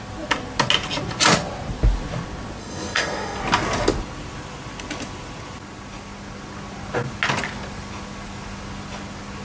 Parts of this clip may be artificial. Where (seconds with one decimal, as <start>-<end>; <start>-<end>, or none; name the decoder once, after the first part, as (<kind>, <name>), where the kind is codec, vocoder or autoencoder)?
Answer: 2.6-3.4 (codec, SNAC)